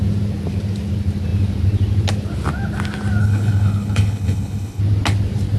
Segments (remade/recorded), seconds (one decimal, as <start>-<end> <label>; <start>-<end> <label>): 0.0-3.2 recorded; 3.2-4.8 remade; 4.8-5.6 recorded